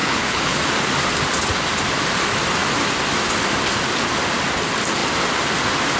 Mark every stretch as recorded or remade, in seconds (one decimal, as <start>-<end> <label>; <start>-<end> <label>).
0.0-0.6 remade; 0.6-6.0 recorded